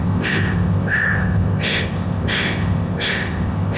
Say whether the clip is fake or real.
fake